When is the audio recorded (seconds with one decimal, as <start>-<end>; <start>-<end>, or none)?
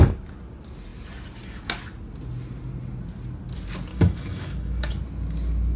0.0-3.9; 4.9-5.8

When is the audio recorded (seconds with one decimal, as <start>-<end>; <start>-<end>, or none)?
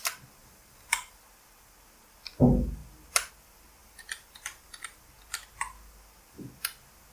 0.0-0.4; 1.2-3.8; 5.0-7.1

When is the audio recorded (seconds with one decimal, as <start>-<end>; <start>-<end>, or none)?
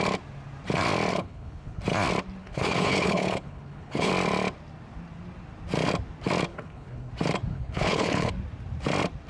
0.0-1.1; 1.8-2.4; 4.1-6.5; 7.1-7.5; 8.3-9.3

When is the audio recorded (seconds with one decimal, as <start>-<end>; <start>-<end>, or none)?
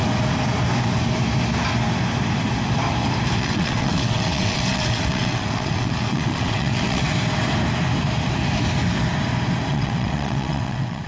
0.0-3.4; 7.0-9.7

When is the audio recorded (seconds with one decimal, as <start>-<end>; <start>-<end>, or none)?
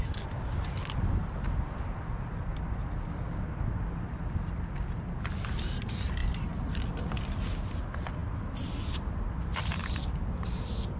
0.0-11.0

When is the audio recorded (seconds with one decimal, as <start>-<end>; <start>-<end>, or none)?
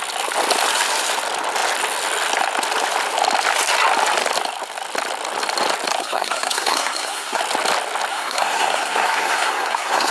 0.0-6.0; 7.4-8.1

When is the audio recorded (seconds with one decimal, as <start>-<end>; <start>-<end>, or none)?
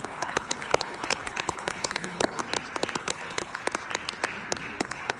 2.4-3.0; 3.6-4.8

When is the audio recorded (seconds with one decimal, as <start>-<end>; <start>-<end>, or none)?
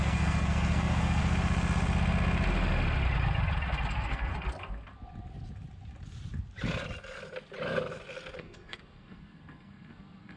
1.2-3.9; 4.3-8.4